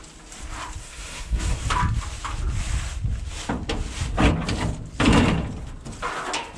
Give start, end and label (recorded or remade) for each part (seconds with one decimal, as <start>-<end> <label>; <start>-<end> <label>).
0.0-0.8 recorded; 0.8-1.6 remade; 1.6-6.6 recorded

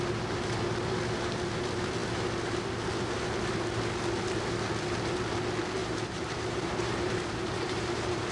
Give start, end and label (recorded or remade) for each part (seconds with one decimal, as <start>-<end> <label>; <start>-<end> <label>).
0.0-5.8 recorded; 5.8-8.3 remade

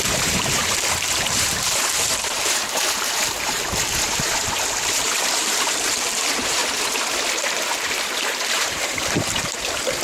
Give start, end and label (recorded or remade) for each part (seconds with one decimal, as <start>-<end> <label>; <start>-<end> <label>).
0.0-6.6 remade; 6.6-7.8 recorded; 7.8-10.0 remade

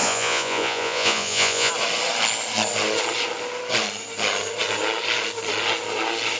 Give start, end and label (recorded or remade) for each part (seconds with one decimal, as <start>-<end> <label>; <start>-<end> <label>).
0.0-1.7 remade; 1.7-6.4 recorded

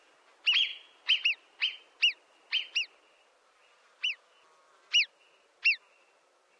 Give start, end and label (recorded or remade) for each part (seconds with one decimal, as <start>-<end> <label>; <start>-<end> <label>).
0.0-6.6 recorded